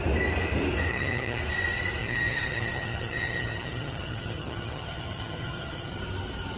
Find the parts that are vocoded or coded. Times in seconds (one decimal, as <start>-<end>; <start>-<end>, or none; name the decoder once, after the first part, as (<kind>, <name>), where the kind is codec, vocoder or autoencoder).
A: 0.9-1.4 (vocoder, HiFi-GAN); 2.0-6.0